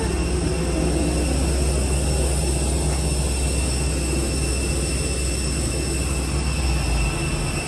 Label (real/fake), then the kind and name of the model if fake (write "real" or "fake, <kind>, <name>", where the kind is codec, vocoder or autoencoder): real